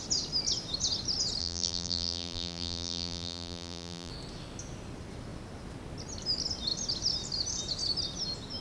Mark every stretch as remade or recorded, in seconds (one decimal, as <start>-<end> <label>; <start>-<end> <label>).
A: 0.0-1.4 recorded; 1.4-4.1 remade; 4.1-8.6 recorded